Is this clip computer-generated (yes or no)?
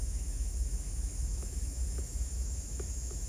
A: yes